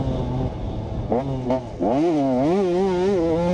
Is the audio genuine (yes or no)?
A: yes